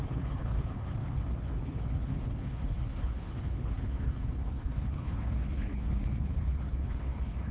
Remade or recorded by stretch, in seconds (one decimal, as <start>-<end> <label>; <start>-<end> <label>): 0.0-7.5 remade